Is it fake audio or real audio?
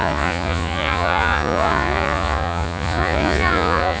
fake